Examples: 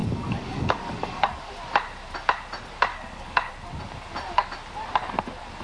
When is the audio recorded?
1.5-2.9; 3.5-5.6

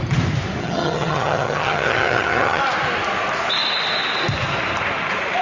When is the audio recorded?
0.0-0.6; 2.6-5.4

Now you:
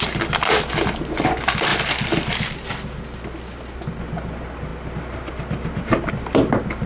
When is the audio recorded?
0.0-6.9